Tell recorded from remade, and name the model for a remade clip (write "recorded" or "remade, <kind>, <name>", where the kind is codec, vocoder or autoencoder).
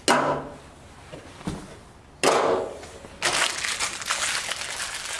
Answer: recorded